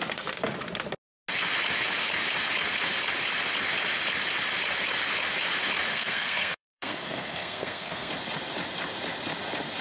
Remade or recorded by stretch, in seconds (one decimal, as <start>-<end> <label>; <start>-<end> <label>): 0.0-5.9 recorded; 5.9-8.1 remade; 8.1-9.8 recorded